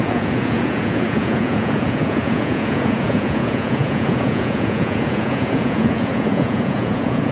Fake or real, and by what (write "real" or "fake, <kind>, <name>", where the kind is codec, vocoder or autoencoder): fake, vocoder, Vocos